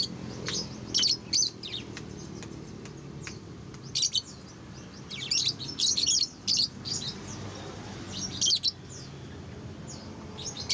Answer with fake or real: real